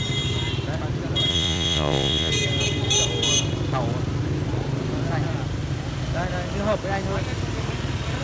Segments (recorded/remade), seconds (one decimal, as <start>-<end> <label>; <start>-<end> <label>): 0.0-1.3 recorded; 1.3-2.3 remade; 2.3-8.2 recorded